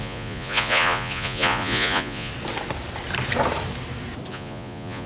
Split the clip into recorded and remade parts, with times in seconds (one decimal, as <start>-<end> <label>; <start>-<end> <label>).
0.0-2.3 remade; 2.3-4.3 recorded; 4.3-5.1 remade